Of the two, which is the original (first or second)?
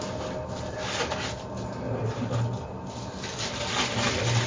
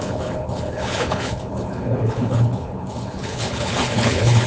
first